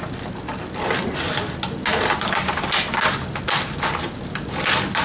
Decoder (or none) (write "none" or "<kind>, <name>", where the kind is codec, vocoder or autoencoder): none